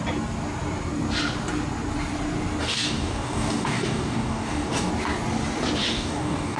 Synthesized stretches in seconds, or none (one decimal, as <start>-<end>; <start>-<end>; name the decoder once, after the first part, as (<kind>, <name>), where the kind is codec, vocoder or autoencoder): 2.6-4.9 (codec, DAC); 5.8-6.6